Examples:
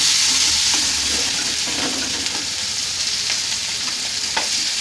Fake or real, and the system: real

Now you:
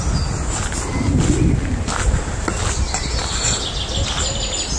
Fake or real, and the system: real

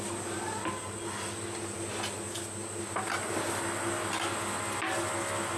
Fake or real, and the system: real